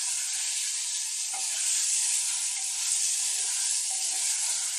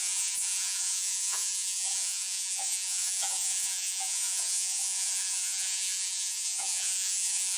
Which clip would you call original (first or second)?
first